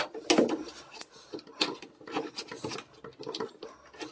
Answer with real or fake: real